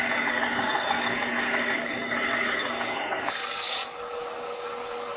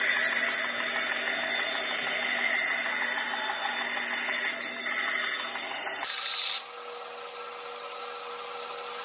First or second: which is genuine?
second